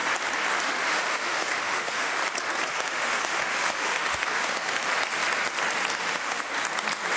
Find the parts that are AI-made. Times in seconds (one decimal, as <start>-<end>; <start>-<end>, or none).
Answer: 0.6-2.2; 2.7-4.9; 6.0-6.5